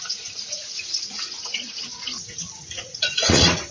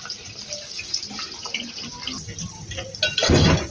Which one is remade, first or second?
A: first